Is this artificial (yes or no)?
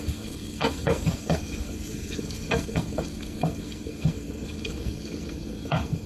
yes